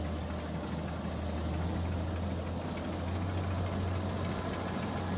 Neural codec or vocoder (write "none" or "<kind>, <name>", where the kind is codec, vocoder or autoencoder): none